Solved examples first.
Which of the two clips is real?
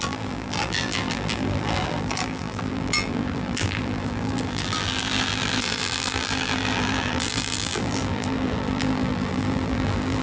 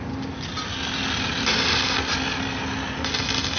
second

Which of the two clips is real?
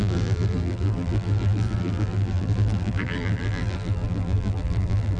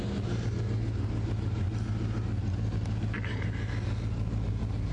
second